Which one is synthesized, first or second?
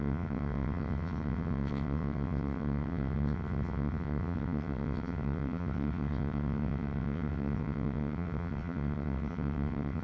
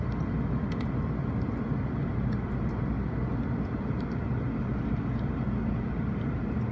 first